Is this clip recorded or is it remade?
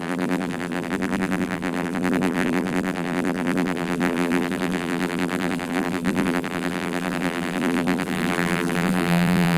remade